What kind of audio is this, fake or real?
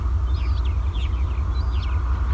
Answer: real